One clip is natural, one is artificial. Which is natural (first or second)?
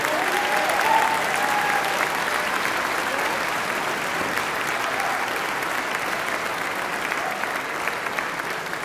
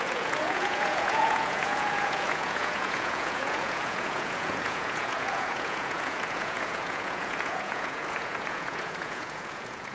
first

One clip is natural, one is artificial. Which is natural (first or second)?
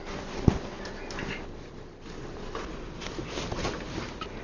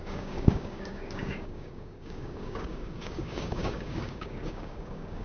first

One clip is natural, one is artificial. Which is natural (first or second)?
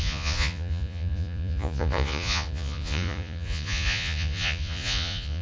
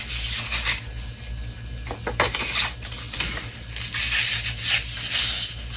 second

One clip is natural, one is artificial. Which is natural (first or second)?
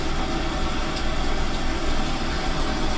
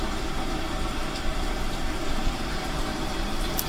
first